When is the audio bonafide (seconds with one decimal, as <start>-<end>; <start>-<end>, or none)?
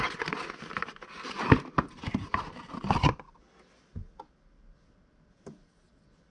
0.0-6.3